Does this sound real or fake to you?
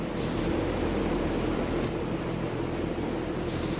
fake